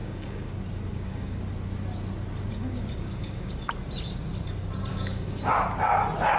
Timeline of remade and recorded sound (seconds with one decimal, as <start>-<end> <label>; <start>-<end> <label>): 0.0-0.5 remade; 0.5-0.9 recorded; 0.9-1.4 remade; 1.4-2.5 recorded; 2.5-3.7 remade; 3.7-4.9 recorded; 4.9-5.5 remade; 5.5-6.4 recorded